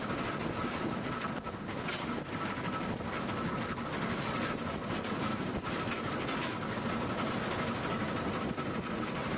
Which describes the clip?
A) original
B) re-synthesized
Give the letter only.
A